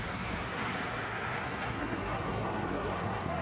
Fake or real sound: fake